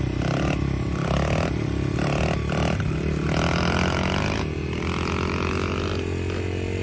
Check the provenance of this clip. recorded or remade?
recorded